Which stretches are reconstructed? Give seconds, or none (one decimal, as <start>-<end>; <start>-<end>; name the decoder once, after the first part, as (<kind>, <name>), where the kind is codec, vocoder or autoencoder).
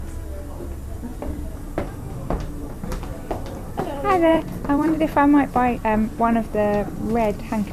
1.1-1.7 (vocoder, BigVGAN v2); 3.1-3.7; 4.3-5.0